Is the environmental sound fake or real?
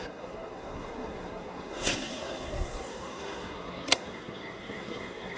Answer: fake